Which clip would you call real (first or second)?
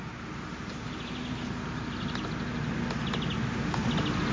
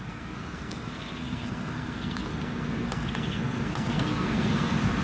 first